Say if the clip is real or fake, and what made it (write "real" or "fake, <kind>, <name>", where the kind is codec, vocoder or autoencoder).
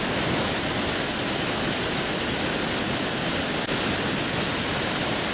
real